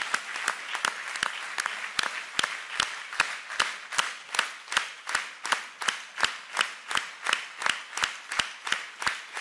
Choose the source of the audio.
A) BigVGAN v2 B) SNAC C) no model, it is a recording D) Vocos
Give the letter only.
C